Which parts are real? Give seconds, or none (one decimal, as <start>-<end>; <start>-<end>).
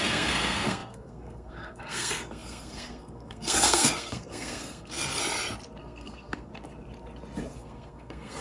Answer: 5.2-5.8; 6.5-7.5